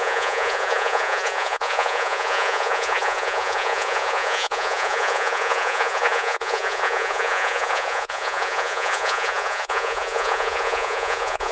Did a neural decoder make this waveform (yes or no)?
yes